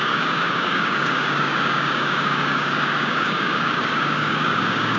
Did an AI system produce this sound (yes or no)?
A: yes